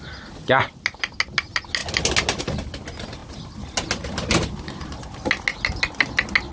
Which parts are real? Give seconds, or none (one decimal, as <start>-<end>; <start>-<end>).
0.0-6.5